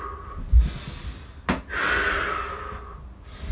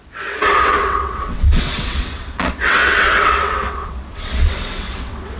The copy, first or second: second